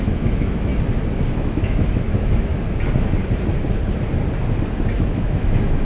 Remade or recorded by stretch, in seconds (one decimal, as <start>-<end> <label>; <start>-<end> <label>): 0.0-0.7 remade; 0.7-1.4 recorded; 1.4-2.5 remade; 2.5-4.9 recorded; 4.9-5.8 remade